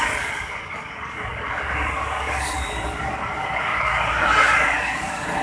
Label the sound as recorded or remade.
remade